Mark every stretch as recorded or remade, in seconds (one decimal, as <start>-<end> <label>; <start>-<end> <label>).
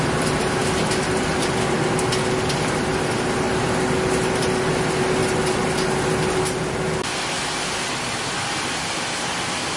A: 0.0-9.8 recorded